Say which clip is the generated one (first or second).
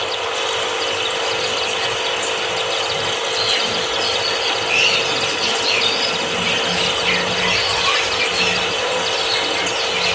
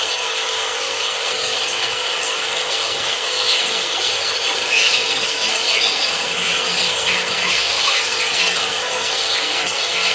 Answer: second